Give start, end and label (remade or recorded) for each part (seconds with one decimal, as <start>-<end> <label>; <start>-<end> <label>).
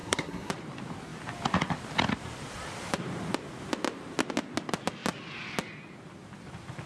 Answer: 0.0-0.5 remade; 0.5-6.9 recorded